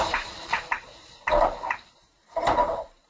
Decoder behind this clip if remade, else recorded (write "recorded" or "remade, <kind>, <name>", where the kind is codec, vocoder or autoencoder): remade, vocoder, BigVGAN v2